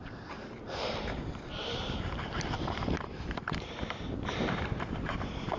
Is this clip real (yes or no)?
no